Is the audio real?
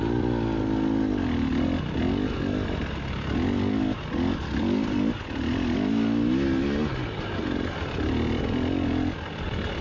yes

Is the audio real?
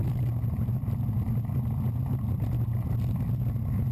yes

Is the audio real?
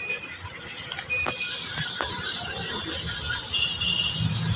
yes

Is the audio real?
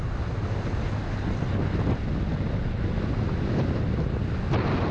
yes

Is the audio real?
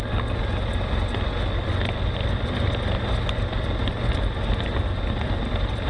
yes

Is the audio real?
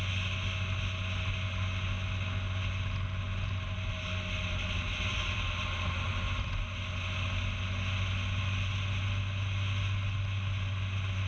yes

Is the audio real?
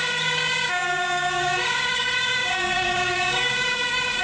no